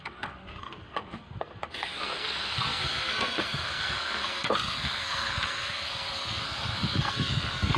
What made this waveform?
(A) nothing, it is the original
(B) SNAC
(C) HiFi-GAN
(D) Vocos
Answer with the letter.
B